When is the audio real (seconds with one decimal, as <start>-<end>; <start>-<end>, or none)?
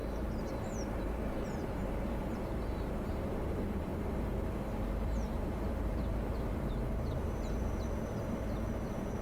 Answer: none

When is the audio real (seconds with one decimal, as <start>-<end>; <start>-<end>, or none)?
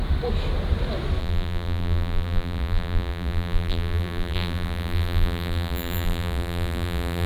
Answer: 0.0-1.2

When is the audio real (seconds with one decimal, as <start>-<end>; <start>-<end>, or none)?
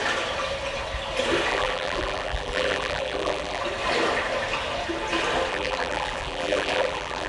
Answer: 0.0-1.5; 3.6-5.5